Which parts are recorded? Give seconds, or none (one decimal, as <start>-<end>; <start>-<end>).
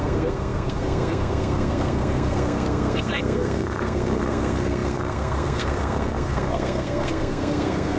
none